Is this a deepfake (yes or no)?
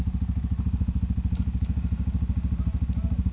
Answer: no